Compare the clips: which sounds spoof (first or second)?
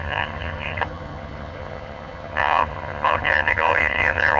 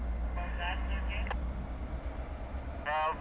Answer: first